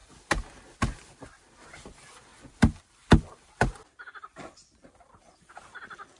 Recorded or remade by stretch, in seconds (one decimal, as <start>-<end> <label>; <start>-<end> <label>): 0.0-0.8 recorded; 0.8-2.3 remade; 2.3-2.8 recorded; 2.8-6.2 remade